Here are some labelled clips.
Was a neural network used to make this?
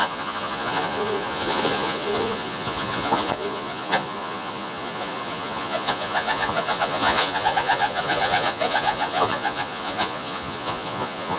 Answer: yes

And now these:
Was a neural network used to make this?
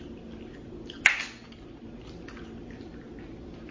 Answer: no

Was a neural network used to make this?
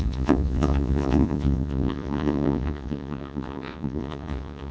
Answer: yes